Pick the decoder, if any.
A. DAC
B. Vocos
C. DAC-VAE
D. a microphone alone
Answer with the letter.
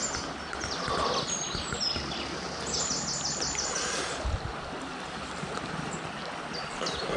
D